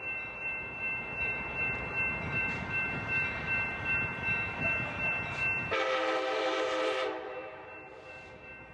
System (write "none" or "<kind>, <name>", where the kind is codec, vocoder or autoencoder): vocoder, BigVGAN v2